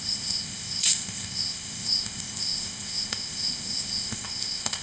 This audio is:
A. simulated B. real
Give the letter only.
A